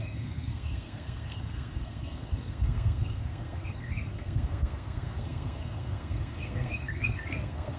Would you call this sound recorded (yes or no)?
no